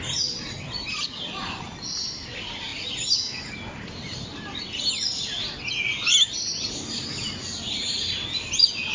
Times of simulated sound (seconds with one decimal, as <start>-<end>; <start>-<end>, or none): none